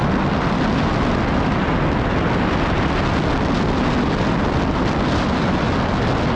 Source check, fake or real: real